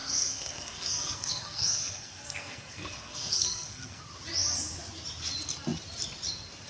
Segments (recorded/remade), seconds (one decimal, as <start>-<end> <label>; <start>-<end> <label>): 0.0-4.0 remade; 4.0-6.7 recorded